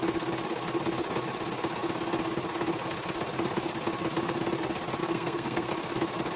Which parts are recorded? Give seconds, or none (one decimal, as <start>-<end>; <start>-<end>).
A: 0.0-5.0; 5.7-6.4